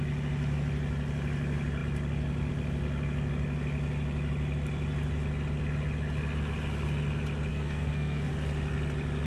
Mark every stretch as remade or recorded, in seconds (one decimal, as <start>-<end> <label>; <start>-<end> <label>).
0.0-7.5 recorded; 7.5-8.3 remade; 8.3-9.3 recorded